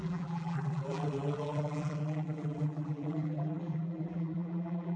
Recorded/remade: remade